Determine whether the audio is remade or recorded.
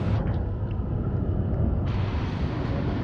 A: recorded